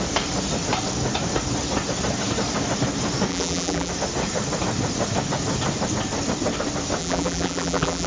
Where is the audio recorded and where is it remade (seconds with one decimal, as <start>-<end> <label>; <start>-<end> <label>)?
0.0-3.3 recorded; 3.3-3.9 remade; 3.9-7.0 recorded; 7.0-8.1 remade